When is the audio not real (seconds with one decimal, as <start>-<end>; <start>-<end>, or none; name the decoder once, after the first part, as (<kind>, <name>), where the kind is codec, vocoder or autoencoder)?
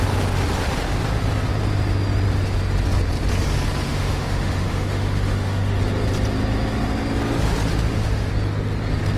3.9-5.8 (autoencoder, DAC-VAE); 7.7-8.3